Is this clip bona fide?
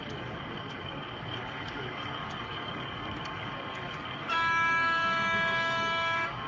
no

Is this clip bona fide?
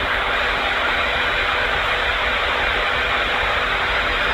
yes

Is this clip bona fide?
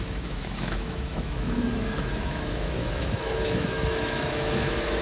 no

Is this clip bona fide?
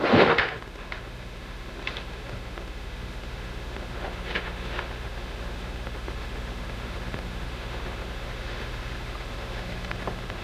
no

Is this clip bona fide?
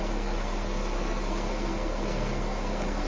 no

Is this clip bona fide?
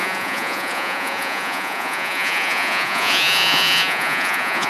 no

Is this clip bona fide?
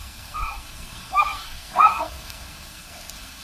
no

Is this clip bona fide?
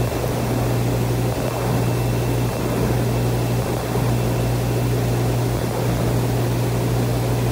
yes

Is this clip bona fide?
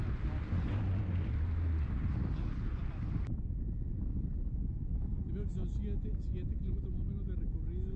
yes